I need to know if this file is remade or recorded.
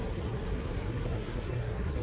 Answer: remade